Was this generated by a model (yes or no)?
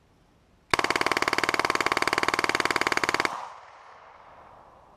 no